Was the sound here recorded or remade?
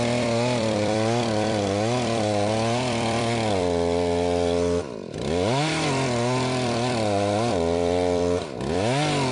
remade